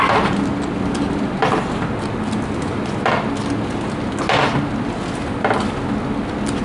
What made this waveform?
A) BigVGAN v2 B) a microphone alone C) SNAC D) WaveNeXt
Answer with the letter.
B